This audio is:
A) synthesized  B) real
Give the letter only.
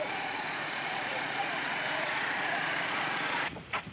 A